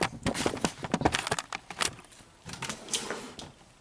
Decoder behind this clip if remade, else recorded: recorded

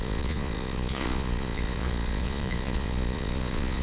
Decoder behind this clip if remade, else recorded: remade, vocoder, Vocos